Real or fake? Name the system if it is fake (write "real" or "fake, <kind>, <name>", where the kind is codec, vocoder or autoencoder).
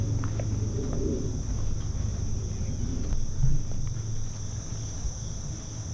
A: real